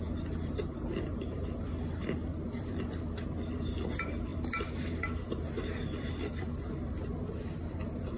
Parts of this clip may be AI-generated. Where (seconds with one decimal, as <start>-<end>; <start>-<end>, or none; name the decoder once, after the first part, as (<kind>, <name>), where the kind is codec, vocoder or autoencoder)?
2.2-2.8 (vocoder, BigVGAN v2); 4.3-8.2